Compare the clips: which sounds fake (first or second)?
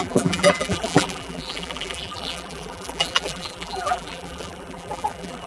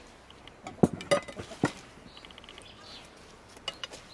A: first